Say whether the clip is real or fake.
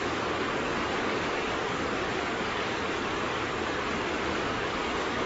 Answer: fake